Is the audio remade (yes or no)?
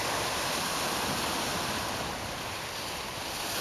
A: no